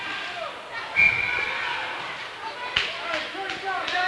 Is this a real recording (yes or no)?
yes